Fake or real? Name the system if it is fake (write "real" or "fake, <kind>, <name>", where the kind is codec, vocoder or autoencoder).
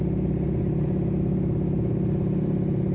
real